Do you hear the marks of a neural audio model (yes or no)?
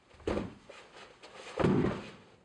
no